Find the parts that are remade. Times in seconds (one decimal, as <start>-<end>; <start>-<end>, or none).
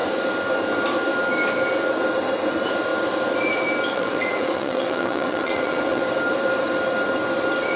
3.9-6.0